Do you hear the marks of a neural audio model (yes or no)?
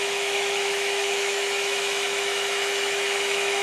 yes